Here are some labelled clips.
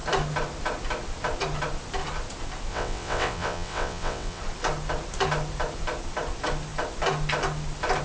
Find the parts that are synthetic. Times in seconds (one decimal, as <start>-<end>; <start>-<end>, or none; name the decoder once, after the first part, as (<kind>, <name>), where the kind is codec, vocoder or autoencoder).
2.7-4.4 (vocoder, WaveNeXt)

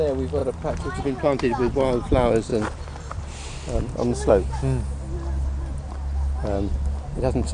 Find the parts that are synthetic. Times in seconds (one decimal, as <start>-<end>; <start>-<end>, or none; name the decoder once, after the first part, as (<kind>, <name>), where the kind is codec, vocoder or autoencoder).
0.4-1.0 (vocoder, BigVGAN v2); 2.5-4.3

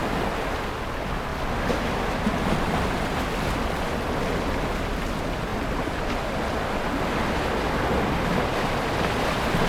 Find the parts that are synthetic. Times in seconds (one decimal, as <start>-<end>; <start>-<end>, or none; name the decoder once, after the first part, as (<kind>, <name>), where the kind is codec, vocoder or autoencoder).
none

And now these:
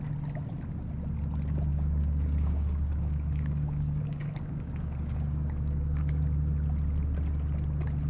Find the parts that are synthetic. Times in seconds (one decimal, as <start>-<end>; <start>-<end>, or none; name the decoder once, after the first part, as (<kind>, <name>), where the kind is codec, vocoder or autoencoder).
1.7-6.2 (codec, DAC)